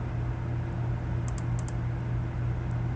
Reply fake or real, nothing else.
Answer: real